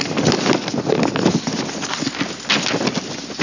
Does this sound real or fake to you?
real